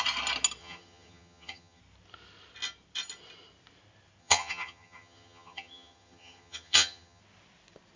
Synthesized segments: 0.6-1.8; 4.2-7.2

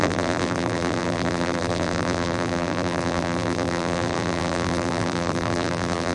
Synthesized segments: 0.0-6.1

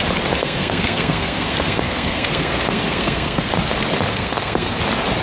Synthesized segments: 0.4-3.5; 4.1-4.8

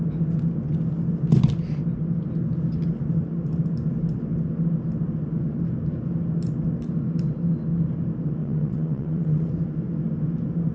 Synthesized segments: 8.4-9.5

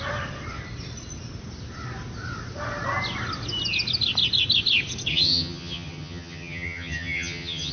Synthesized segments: 5.1-7.7

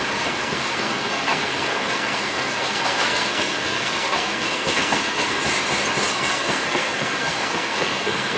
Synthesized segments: 0.0-5.4; 6.1-8.4

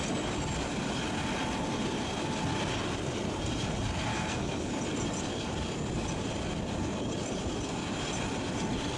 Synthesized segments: 4.1-4.7